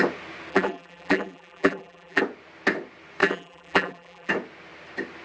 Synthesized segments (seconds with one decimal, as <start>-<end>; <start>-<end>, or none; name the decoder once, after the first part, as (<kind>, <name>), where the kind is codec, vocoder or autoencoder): 0.5-2.2 (vocoder, BigVGAN v2); 3.2-4.3